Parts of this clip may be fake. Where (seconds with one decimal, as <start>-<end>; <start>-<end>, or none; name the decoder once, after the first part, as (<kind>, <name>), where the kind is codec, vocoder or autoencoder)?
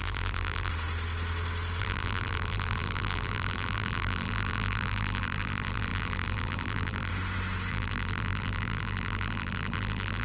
0.0-0.7 (vocoder, BigVGAN v2); 1.8-7.1; 7.7-10.2